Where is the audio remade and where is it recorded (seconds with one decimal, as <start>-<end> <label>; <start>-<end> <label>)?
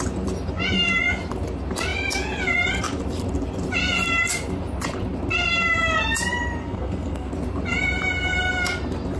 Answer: 0.0-6.6 recorded; 6.6-7.3 remade; 7.3-9.2 recorded